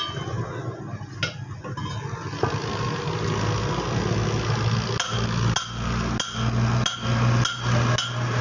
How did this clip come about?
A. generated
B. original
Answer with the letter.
B